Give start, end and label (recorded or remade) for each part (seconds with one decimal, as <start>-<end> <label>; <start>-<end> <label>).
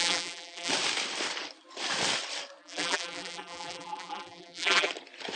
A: 0.0-0.7 remade; 0.7-2.6 recorded; 2.6-4.9 remade; 4.9-5.4 recorded